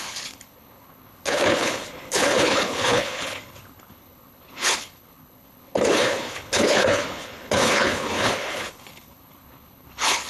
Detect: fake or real fake